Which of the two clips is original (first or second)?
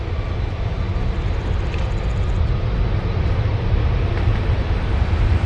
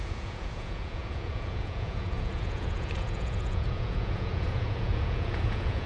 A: first